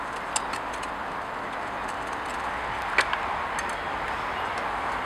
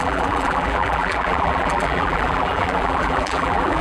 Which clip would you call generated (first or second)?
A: second